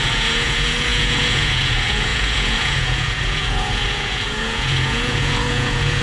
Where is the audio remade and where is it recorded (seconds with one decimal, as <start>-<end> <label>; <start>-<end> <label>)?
0.0-6.0 remade